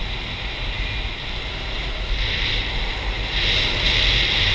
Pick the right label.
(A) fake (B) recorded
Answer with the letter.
B